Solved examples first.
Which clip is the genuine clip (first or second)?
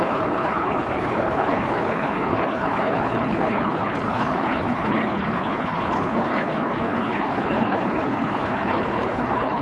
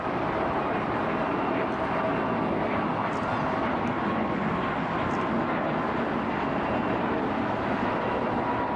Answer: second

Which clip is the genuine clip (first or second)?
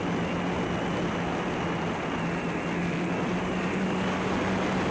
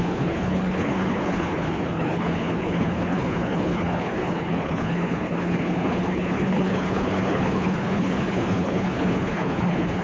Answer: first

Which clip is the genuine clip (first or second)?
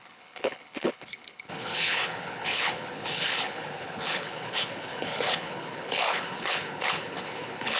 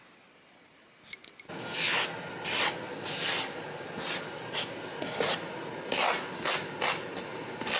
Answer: second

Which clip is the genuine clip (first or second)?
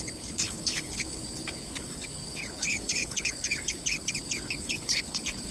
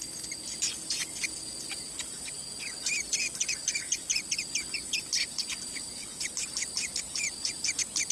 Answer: second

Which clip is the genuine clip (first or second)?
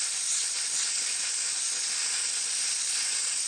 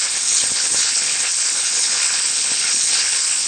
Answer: first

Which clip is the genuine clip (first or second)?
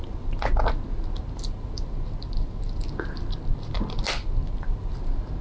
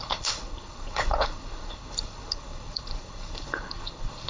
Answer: first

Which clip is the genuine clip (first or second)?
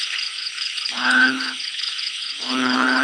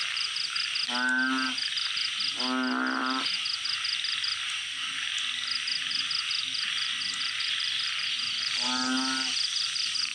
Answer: second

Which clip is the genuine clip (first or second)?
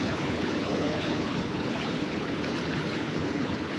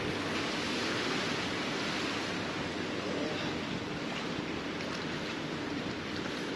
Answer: second